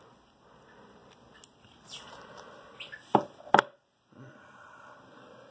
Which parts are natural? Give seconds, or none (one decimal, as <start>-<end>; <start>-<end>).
0.0-5.5